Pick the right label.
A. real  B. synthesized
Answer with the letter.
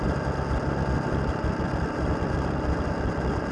A